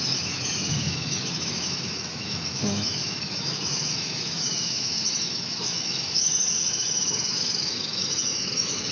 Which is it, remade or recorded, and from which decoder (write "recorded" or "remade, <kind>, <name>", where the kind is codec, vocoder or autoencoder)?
remade, autoencoder, DAC-VAE